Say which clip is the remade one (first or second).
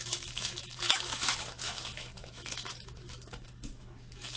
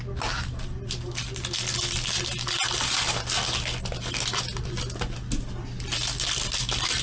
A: first